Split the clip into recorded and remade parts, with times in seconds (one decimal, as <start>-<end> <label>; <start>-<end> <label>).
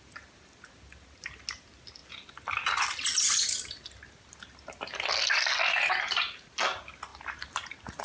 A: 0.0-8.0 recorded